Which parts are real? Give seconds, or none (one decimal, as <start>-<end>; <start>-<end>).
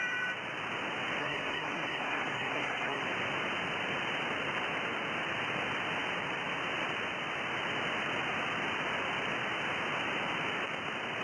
0.0-1.2; 3.0-11.2